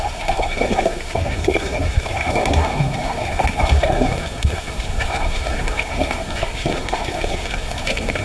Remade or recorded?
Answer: remade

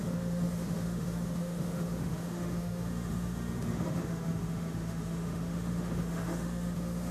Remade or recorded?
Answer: remade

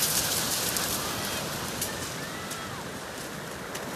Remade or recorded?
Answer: recorded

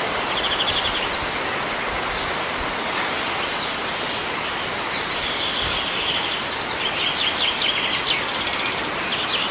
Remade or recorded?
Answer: recorded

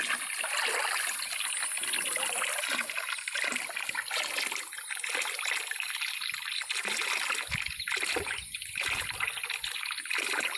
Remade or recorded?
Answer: recorded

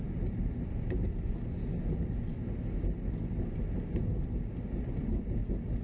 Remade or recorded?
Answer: recorded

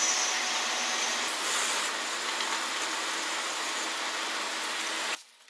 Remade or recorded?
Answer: recorded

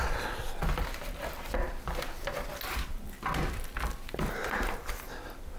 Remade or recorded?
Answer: recorded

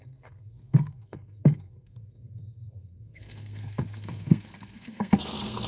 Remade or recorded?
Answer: remade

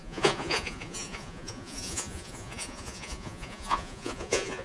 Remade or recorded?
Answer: remade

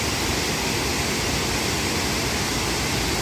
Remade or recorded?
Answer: recorded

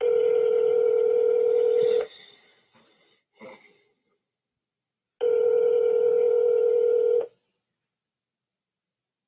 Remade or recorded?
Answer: recorded